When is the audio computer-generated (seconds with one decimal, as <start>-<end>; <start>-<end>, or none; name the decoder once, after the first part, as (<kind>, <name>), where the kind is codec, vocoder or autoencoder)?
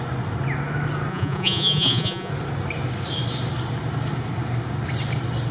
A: 1.1-2.3 (vocoder, Vocos)